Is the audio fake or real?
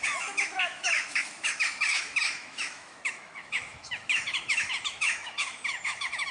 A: fake